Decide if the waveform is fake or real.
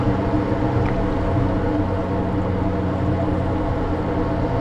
real